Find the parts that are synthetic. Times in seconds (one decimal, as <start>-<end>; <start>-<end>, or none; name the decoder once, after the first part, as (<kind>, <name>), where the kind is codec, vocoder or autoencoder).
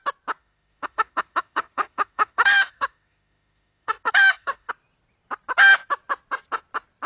0.4-4.7 (autoencoder, DAC-VAE)